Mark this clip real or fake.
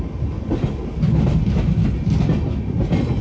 real